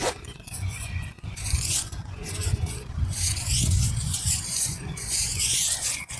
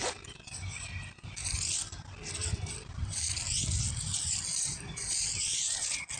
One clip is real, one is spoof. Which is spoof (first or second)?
first